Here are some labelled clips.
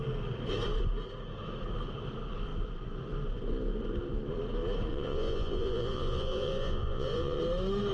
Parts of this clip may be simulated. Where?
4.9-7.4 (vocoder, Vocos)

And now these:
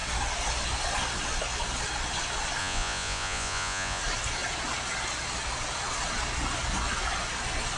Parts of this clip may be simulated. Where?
2.6-4.0 (vocoder, Vocos)

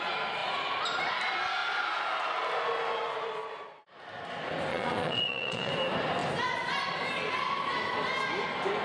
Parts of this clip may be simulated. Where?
4.7-5.7 (vocoder, Vocos)